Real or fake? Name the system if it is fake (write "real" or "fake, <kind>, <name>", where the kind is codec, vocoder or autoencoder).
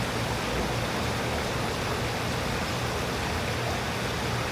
real